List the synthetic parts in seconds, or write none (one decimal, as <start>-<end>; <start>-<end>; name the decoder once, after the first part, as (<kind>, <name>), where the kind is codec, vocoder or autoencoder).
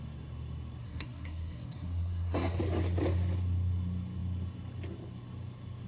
0.8-2.6 (codec, SNAC)